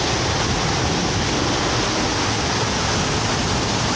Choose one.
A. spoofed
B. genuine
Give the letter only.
B